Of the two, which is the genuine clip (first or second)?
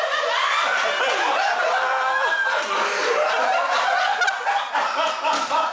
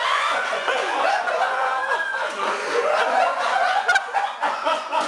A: first